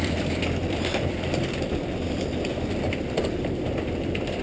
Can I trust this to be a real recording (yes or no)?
no